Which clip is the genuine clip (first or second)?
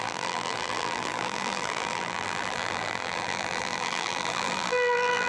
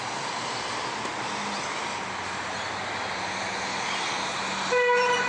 second